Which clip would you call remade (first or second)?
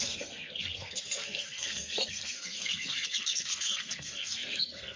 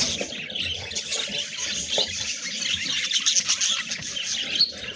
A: first